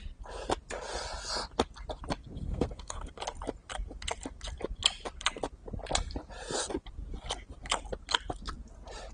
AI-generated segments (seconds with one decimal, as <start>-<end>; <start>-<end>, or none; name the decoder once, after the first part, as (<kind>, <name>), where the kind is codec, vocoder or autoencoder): 2.5-3.1 (codec, SNAC)